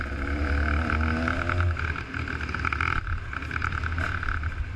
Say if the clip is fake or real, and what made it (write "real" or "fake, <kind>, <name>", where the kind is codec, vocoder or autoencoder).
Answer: real